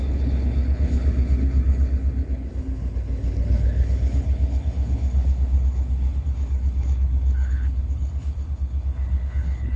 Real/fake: fake